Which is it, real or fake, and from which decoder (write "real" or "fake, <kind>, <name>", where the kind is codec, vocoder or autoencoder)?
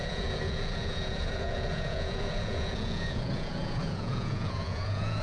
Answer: fake, vocoder, Vocos